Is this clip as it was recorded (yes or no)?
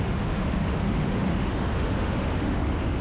no